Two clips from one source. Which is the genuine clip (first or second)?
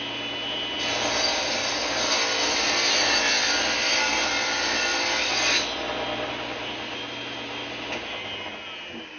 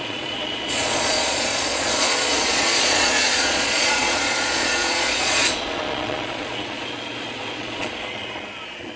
first